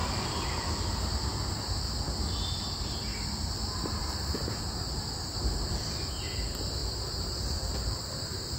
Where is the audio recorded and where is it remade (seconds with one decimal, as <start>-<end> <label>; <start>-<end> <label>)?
0.0-1.2 remade; 1.2-4.0 recorded; 4.0-4.6 remade; 4.6-6.8 recorded; 6.8-8.6 remade